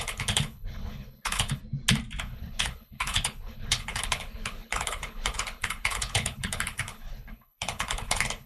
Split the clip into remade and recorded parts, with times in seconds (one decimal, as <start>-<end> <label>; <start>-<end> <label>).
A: 0.0-1.6 remade; 1.6-2.2 recorded; 2.2-8.5 remade